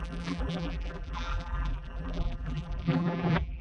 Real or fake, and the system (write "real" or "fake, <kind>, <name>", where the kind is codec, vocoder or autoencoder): fake, vocoder, BigVGAN v2